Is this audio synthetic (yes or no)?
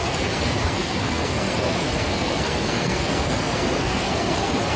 yes